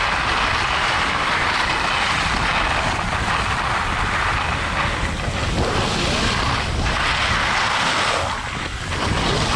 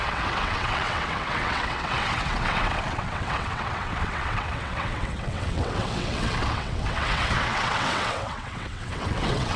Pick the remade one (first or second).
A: second